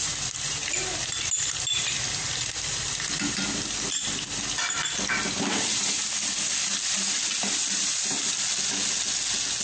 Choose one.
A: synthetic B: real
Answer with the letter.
B